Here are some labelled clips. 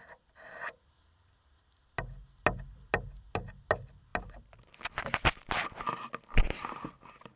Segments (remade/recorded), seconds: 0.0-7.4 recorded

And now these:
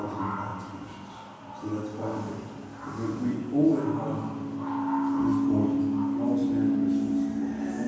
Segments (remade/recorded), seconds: 0.0-7.9 recorded

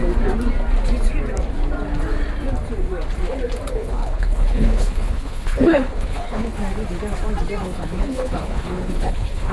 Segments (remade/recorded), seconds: 0.0-3.7 recorded; 3.7-6.6 remade; 6.6-7.6 recorded; 7.6-9.5 remade